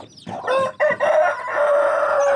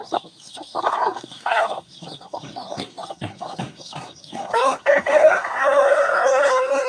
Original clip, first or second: first